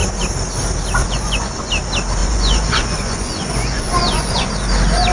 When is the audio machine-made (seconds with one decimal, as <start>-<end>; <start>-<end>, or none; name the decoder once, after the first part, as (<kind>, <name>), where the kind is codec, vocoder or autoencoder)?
1.0-1.7 (vocoder, Vocos); 2.2-4.5